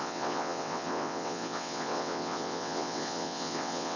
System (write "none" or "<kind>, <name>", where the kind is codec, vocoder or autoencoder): vocoder, WaveNeXt